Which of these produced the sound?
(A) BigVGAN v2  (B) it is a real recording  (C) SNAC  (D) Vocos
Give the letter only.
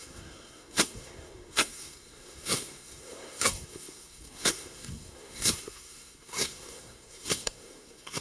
C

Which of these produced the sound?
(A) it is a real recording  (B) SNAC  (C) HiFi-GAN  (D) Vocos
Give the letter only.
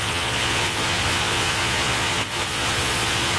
D